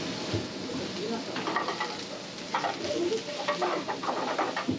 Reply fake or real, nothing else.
real